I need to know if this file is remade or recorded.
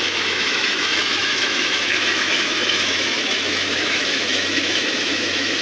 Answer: remade